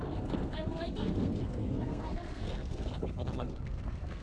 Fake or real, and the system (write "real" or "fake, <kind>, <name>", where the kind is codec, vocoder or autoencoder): fake, codec, SNAC